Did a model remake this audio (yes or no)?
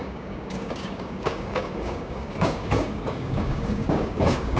yes